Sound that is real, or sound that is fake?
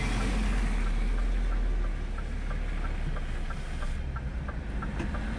real